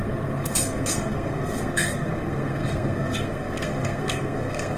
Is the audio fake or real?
fake